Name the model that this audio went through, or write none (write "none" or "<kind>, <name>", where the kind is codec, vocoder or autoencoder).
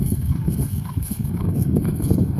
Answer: codec, SNAC